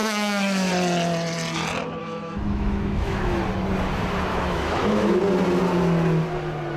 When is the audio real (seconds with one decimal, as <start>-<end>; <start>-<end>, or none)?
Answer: 0.7-2.0; 3.4-4.3; 5.2-6.8